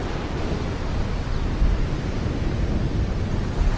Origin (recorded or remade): recorded